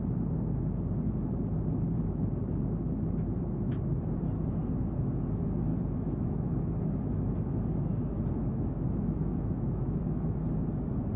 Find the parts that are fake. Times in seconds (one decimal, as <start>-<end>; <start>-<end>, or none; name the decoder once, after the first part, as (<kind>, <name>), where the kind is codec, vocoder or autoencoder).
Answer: 5.7-10.5 (autoencoder, DAC-VAE)